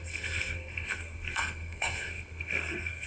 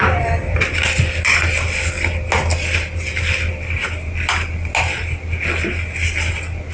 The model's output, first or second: first